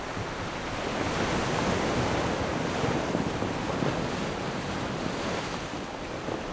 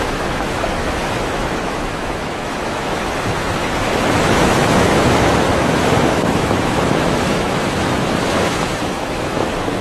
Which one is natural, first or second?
first